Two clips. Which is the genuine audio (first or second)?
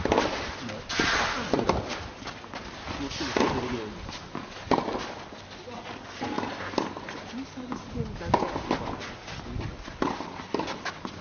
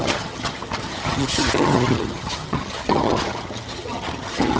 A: first